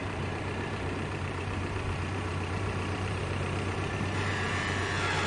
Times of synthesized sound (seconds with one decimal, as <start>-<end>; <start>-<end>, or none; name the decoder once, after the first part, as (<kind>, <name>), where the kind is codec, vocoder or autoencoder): 0.0-4.3 (vocoder, BigVGAN v2)